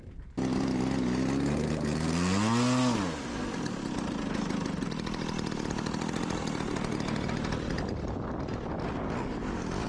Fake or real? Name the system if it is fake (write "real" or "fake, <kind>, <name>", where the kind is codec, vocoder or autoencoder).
real